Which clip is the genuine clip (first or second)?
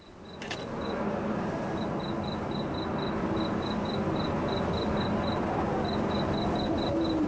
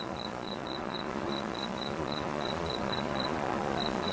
first